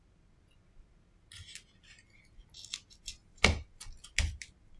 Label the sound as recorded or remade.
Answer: recorded